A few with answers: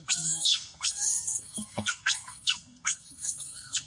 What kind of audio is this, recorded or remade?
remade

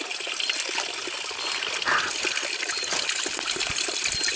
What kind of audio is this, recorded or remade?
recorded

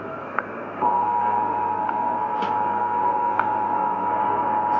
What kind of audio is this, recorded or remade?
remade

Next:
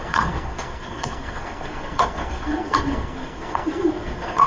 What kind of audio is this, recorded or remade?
remade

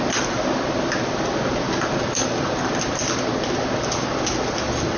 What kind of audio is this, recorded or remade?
recorded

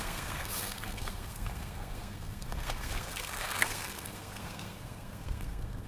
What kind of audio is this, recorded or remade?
remade